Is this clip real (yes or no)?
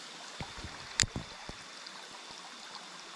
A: yes